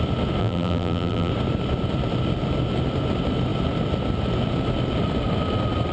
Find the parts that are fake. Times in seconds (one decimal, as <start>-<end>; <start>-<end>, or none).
0.4-1.3